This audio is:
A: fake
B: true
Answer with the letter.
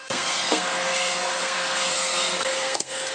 A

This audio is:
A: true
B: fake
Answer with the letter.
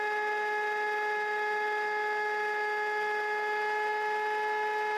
A